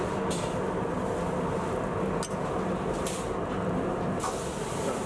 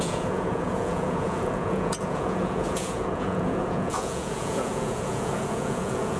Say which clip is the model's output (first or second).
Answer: second